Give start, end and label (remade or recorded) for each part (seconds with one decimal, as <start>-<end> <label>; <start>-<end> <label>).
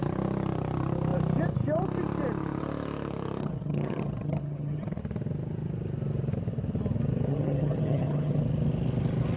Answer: 0.0-3.4 recorded; 3.4-5.0 remade; 5.0-7.3 recorded; 7.3-8.4 remade; 8.4-9.4 recorded